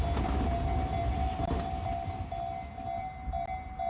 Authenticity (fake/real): real